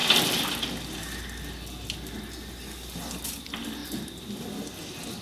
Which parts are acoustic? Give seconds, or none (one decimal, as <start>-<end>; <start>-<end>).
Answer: 0.0-5.2